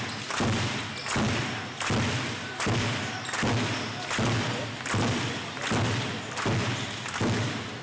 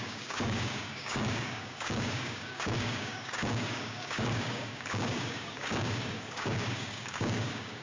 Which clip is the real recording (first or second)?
first